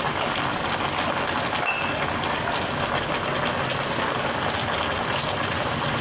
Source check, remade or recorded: recorded